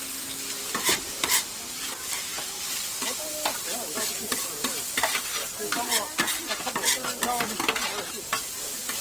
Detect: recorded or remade recorded